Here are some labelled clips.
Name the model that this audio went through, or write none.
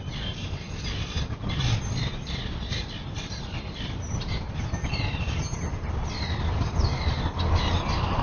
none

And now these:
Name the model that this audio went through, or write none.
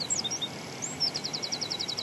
none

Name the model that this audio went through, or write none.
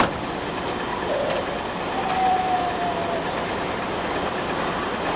vocoder, BigVGAN v2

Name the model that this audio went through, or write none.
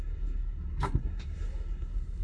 codec, SNAC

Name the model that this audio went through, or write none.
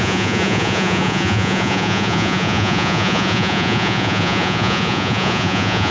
vocoder, Vocos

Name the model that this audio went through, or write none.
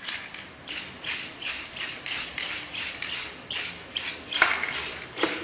none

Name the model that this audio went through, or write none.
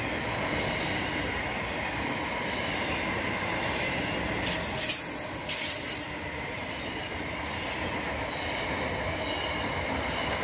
none